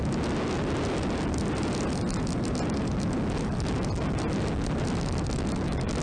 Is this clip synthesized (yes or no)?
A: no